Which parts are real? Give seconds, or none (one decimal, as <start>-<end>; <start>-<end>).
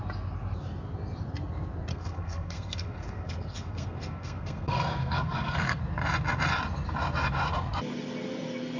0.0-1.9; 5.8-8.8